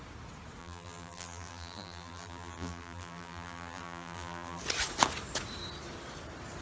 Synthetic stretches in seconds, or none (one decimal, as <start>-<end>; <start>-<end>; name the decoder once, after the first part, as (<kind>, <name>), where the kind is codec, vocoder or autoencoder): 0.6-4.6 (vocoder, BigVGAN v2)